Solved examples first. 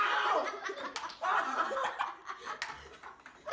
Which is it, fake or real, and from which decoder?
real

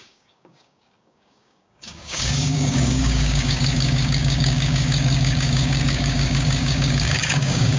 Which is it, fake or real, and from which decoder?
fake, codec, DAC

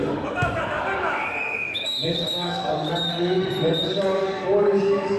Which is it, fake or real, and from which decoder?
fake, codec, DAC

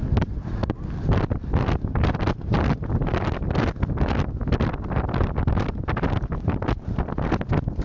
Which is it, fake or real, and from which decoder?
real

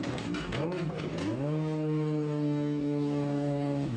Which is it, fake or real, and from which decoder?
fake, codec, DAC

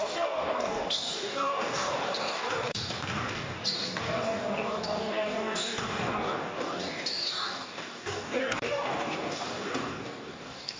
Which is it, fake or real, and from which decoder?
fake, codec, DAC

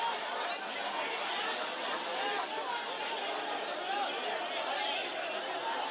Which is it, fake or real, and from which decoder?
real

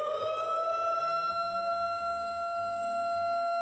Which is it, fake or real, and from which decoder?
fake, codec, DAC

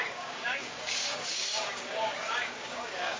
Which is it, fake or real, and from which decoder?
fake, codec, DAC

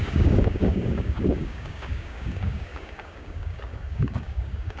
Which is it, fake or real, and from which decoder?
fake, codec, DAC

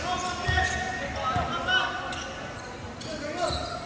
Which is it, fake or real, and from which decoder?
real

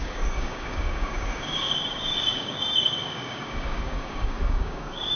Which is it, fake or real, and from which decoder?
fake, codec, DAC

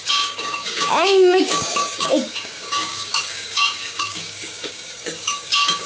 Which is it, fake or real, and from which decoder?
fake, codec, DAC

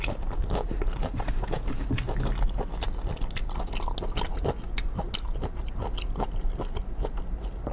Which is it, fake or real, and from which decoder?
real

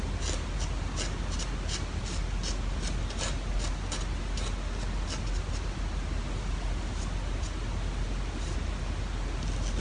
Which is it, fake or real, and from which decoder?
real